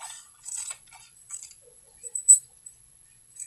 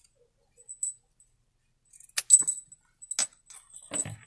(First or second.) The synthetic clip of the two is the first